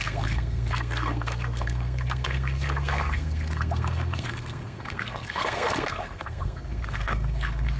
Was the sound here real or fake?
fake